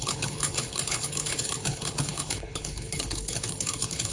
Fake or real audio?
fake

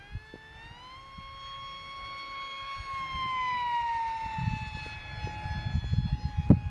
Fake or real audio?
real